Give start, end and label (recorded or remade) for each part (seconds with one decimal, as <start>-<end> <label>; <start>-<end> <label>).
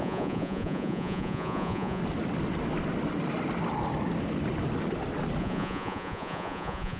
0.0-2.0 remade; 2.0-5.4 recorded; 5.4-7.0 remade